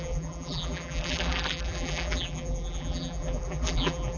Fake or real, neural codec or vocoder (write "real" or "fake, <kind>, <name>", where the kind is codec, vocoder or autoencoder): fake, vocoder, BigVGAN v2